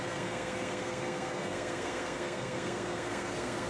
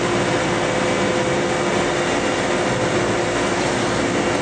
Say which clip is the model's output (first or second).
first